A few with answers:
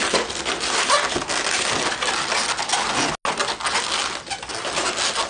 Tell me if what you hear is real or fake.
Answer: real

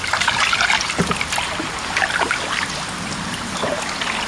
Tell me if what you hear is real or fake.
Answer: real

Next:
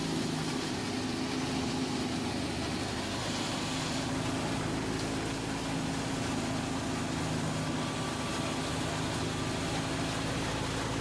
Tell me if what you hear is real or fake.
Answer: real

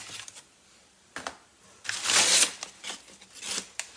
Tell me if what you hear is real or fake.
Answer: real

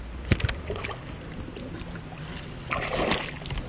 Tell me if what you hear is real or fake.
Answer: real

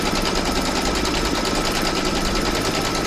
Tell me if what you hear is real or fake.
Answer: real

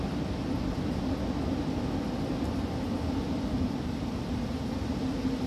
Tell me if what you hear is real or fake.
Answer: real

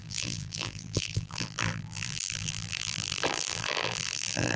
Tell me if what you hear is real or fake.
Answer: fake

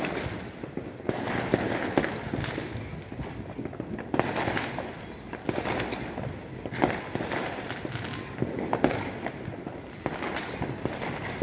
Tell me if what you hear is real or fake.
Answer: real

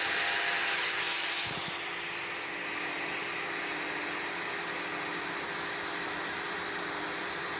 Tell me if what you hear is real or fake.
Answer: real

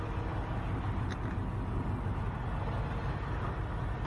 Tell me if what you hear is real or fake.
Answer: real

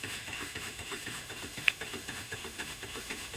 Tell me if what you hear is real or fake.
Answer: fake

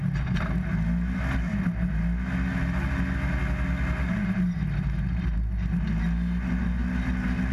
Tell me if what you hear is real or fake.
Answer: real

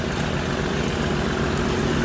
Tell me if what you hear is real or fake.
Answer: real